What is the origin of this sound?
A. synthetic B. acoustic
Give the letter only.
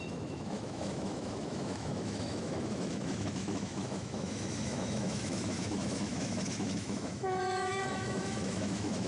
A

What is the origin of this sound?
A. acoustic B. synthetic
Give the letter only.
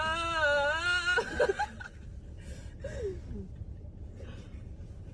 A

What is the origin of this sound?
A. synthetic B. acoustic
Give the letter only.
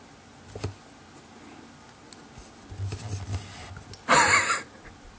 B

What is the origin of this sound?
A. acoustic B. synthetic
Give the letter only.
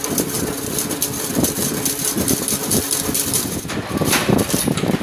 B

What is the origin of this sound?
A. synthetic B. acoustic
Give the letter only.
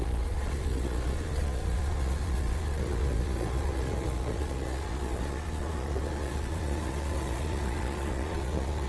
A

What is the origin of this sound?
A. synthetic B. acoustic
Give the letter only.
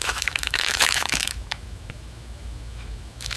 A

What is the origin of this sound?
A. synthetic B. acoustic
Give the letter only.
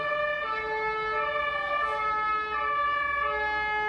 B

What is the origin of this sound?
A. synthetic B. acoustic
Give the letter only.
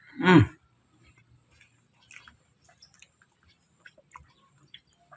B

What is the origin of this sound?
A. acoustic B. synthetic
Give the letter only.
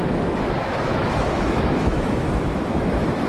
B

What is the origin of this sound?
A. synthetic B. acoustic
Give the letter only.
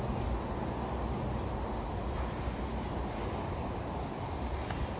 B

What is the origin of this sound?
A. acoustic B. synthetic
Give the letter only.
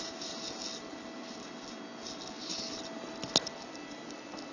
A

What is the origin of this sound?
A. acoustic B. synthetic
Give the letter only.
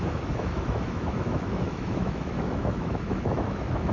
B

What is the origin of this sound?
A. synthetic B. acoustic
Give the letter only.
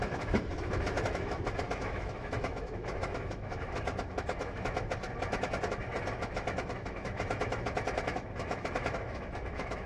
A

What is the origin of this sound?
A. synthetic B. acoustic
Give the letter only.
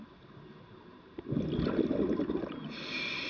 B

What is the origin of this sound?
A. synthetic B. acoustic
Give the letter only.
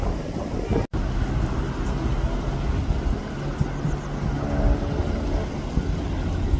B